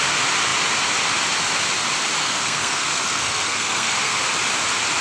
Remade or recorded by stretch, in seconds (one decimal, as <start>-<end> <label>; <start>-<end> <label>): 0.0-2.2 recorded; 2.2-4.2 remade; 4.2-5.0 recorded